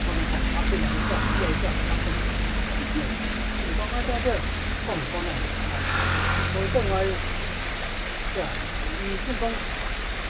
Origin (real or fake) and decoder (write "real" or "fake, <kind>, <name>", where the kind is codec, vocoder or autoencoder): real